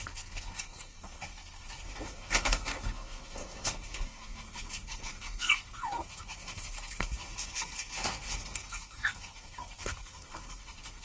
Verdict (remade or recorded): remade